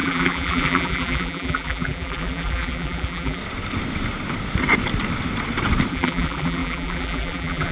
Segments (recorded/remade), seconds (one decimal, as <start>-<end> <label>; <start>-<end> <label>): 0.0-3.4 remade; 3.4-5.9 recorded; 5.9-7.7 remade